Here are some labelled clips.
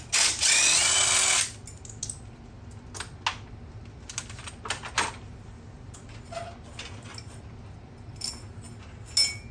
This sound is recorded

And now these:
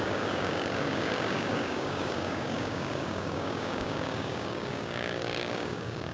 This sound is remade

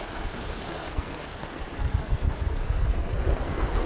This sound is remade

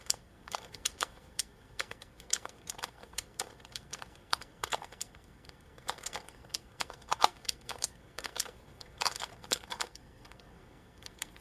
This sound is remade